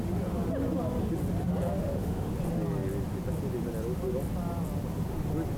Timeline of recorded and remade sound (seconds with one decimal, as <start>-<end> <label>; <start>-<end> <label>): 0.0-1.8 recorded; 1.8-2.3 remade; 2.3-5.6 recorded